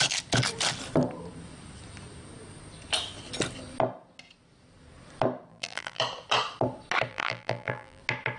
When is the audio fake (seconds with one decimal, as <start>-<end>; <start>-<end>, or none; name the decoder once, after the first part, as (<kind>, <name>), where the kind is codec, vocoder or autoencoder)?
5.5-6.0 (vocoder, BigVGAN v2); 7.1-8.0